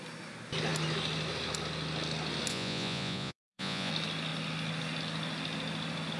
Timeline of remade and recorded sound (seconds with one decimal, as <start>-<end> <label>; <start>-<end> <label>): 0.0-2.5 recorded; 2.5-3.9 remade; 3.9-6.2 recorded